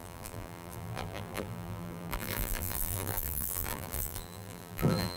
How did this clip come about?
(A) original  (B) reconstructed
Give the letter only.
B